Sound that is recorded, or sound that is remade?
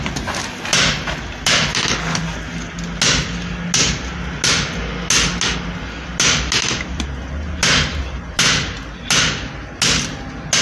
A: recorded